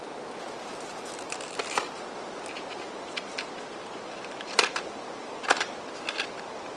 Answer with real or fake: real